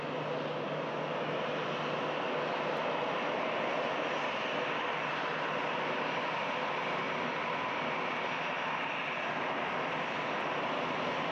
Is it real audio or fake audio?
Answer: real